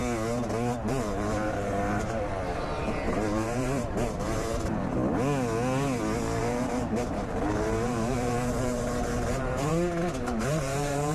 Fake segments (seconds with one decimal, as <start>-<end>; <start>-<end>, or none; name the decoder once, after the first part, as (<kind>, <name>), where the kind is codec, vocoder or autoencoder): 0.8-4.9 (vocoder, BigVGAN v2); 6.4-9.7; 10.2-11.1